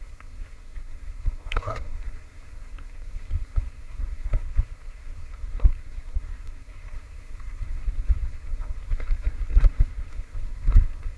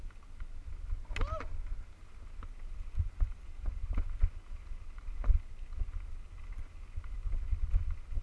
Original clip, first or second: second